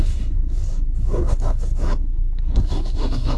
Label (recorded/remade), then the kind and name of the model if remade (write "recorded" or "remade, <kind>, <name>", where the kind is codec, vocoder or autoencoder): remade, codec, SNAC